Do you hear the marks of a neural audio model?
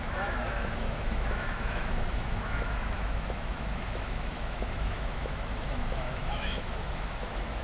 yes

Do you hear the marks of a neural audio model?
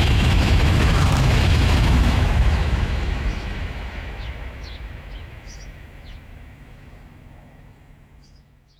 yes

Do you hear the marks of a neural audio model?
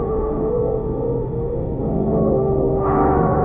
yes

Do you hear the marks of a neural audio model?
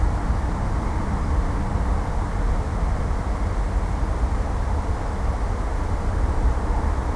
no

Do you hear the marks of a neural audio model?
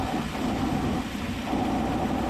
no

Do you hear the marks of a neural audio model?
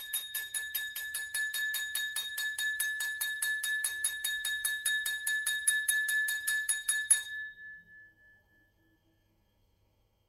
yes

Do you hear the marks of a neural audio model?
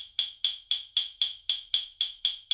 yes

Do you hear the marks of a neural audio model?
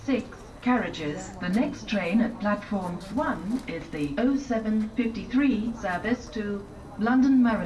no